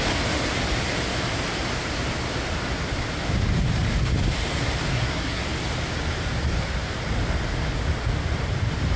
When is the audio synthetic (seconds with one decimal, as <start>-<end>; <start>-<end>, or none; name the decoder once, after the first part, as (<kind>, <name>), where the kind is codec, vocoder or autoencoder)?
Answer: 4.9-5.4 (codec, SNAC)